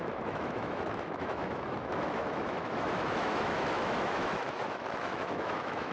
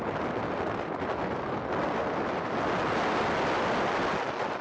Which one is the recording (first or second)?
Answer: second